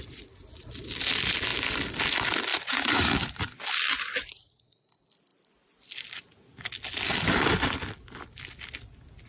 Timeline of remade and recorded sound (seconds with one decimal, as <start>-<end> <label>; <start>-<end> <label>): 0.0-2.5 recorded; 2.5-3.5 remade; 3.5-9.3 recorded